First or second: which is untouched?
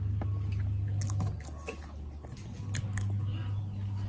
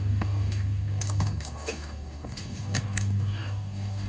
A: first